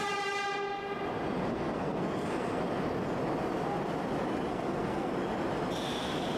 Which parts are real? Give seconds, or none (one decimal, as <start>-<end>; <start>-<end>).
0.0-1.5; 2.6-4.5; 5.1-6.4